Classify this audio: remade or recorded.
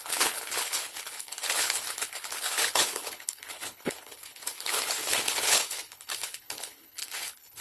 remade